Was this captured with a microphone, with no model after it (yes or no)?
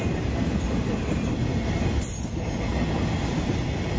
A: yes